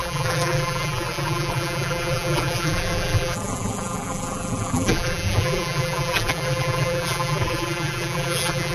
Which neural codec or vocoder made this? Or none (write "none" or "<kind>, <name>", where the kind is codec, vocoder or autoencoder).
vocoder, BigVGAN v2